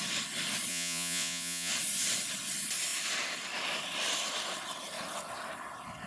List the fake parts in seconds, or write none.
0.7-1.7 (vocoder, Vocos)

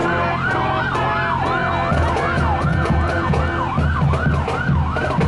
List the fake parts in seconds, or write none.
2.7-3.4 (vocoder, Vocos)

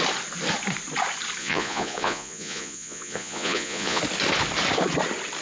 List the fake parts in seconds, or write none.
1.4-4.0 (vocoder, Vocos)

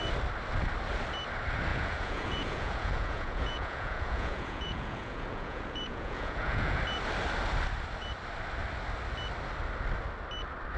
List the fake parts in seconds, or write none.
1.7-6.8 (vocoder, Vocos)

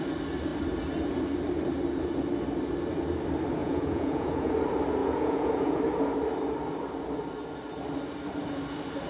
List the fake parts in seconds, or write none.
3.6-4.5 (vocoder, Vocos); 5.0-5.8

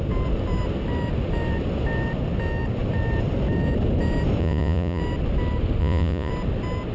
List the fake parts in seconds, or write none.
4.4-5.0 (vocoder, Vocos); 5.8-6.3

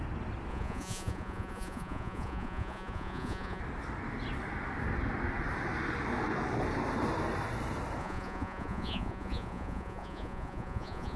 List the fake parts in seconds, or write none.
0.5-3.6 (vocoder, Vocos); 8.0-11.2